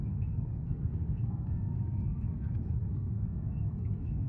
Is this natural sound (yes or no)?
no